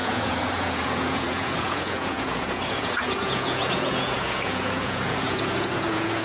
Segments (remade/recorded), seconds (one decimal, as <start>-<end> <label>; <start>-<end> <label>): 0.0-6.2 remade